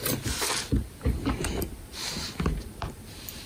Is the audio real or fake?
real